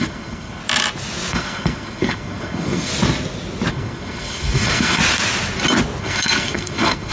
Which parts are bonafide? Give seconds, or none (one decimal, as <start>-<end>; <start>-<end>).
0.6-1.3; 2.9-3.7; 5.0-6.0